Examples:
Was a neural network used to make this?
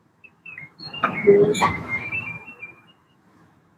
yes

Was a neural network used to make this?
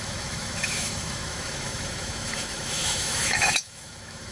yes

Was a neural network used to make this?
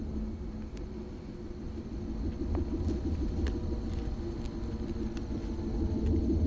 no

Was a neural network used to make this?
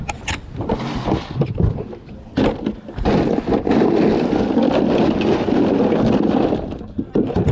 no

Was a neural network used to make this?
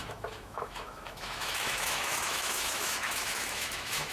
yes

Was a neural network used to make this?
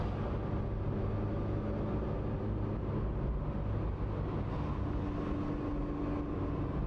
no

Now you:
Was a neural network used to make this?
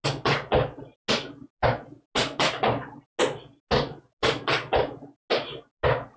no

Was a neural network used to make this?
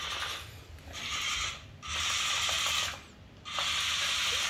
no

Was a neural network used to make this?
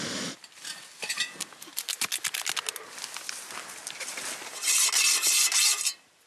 no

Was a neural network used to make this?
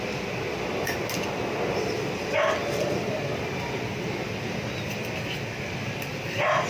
no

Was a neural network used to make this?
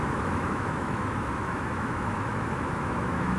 yes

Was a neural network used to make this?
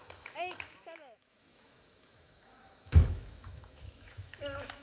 yes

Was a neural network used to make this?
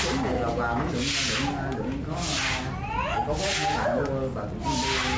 no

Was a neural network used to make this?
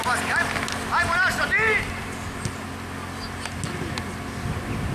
no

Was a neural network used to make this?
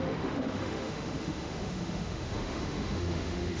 yes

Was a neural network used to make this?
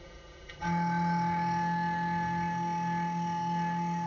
yes